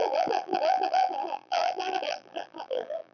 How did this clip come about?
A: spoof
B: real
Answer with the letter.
A